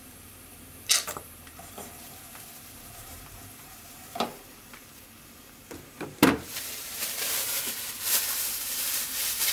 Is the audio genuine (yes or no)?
no